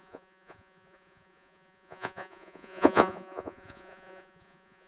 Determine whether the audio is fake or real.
fake